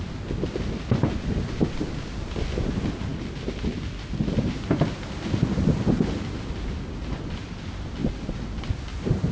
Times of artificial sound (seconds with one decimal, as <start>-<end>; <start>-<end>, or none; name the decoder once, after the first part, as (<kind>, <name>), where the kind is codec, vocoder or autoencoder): none